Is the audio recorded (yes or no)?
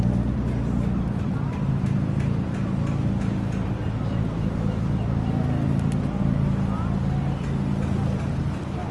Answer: yes